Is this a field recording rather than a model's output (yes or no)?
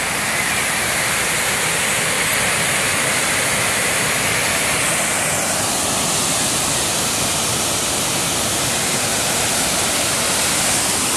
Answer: yes